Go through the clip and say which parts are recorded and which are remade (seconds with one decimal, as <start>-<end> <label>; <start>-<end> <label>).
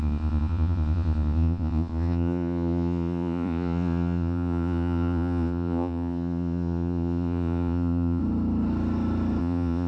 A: 0.0-8.2 remade; 8.2-9.4 recorded; 9.4-9.9 remade